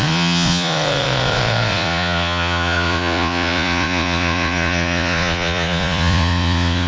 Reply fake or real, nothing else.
fake